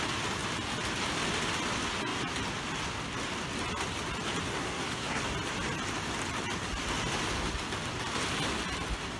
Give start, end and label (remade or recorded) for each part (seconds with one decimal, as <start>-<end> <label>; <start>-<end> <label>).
0.0-4.5 recorded; 4.5-5.2 remade; 5.2-9.2 recorded